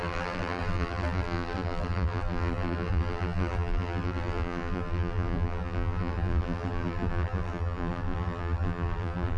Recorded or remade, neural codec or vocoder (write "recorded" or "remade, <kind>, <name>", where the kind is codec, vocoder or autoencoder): remade, vocoder, BigVGAN v2